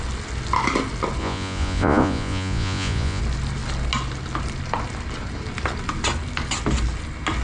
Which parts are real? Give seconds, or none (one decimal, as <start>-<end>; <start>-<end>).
0.0-1.2; 3.2-7.4